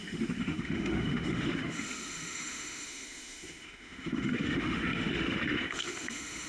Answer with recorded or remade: remade